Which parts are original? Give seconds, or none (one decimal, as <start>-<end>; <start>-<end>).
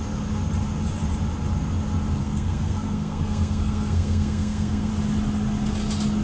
0.0-2.2; 4.9-6.2